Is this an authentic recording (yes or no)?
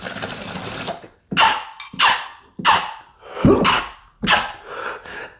yes